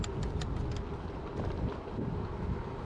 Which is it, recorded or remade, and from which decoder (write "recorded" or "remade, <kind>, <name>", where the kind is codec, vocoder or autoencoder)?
recorded